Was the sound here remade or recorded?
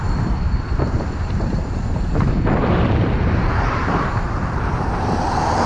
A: remade